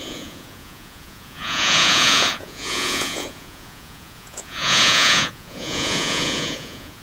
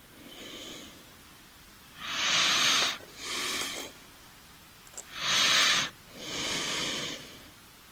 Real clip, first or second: second